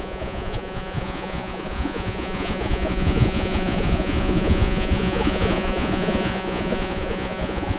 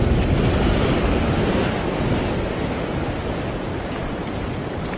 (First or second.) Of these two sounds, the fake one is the first